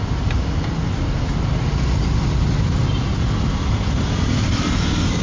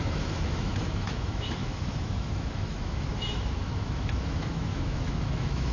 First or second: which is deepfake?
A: second